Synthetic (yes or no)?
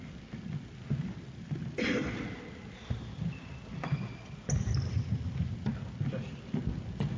no